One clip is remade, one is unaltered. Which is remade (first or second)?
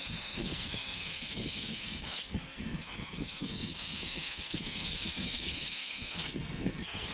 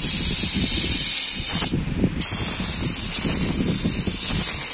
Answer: first